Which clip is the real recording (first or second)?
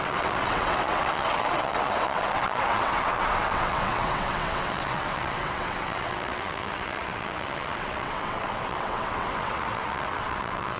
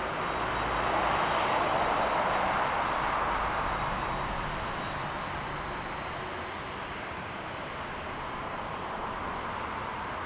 second